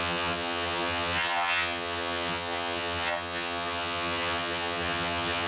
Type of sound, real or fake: fake